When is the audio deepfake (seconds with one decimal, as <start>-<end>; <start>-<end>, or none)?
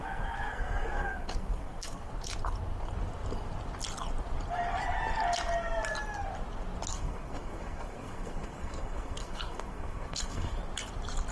0.0-2.1; 6.9-10.6